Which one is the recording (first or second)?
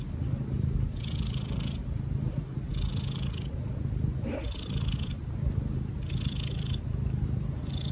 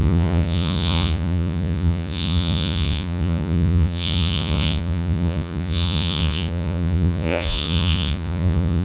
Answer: first